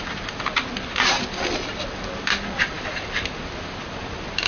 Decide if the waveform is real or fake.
real